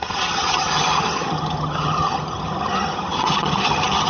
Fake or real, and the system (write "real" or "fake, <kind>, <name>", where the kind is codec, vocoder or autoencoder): fake, vocoder, HiFi-GAN